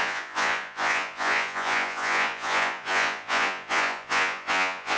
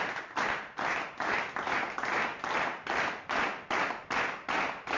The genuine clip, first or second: second